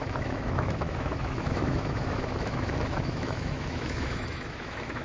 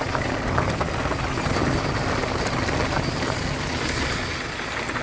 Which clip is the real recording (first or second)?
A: second